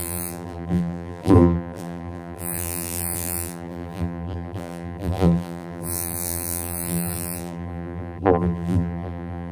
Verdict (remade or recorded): remade